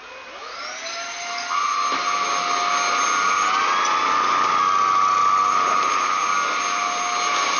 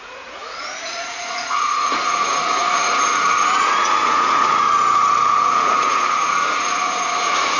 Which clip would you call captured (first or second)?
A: first